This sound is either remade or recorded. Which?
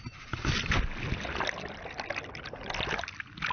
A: recorded